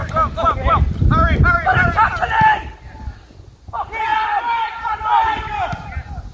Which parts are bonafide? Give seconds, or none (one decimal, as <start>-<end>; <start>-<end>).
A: 0.0-6.3